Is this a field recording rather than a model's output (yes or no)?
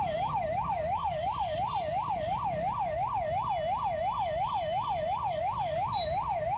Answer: yes